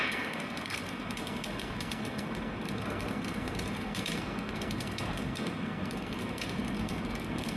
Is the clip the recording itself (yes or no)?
no